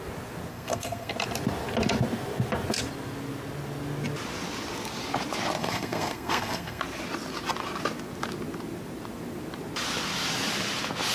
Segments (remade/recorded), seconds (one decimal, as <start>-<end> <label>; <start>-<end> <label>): 0.0-0.5 recorded; 0.5-1.1 remade; 1.1-5.6 recorded; 5.6-6.8 remade; 6.8-11.1 recorded